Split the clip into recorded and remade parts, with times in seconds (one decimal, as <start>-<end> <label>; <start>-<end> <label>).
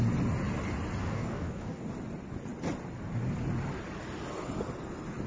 0.0-1.0 recorded; 1.0-1.8 remade; 1.8-5.3 recorded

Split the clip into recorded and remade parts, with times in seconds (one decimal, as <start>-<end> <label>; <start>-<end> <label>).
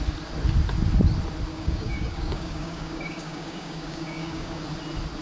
0.0-1.5 recorded; 1.5-4.6 remade; 4.6-5.2 recorded